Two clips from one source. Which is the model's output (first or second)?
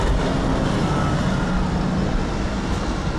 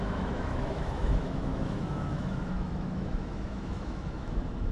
second